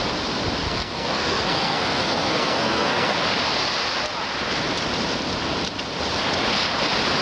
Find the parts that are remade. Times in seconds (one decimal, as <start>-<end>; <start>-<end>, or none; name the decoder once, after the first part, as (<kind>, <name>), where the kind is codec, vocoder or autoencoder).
0.6-3.2 (codec, SNAC)